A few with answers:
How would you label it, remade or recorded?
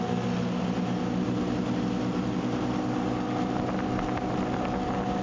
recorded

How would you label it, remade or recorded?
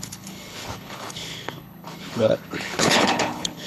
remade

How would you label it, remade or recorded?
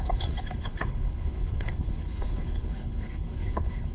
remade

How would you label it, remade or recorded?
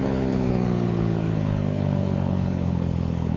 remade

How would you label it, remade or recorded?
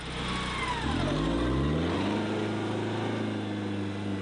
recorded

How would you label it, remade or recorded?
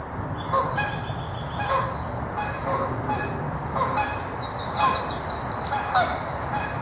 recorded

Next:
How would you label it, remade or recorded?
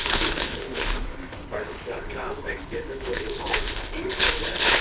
remade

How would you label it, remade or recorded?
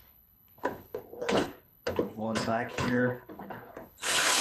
remade